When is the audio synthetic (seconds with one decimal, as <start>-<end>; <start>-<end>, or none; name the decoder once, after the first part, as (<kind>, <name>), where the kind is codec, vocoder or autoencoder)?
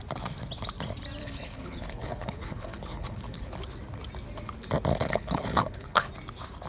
1.2-3.5 (codec, HILCodec); 4.9-6.1